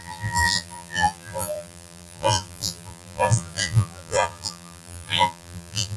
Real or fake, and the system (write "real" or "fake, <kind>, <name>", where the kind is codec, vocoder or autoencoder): fake, vocoder, BigVGAN v2